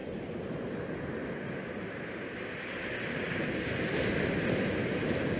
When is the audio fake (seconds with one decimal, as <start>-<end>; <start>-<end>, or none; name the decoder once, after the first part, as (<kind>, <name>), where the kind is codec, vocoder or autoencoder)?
0.0-2.9 (vocoder, BigVGAN v2)